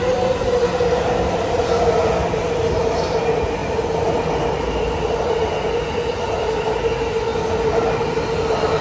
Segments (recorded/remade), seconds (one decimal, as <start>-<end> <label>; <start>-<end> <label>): 0.0-8.8 recorded